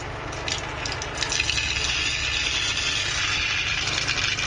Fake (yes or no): no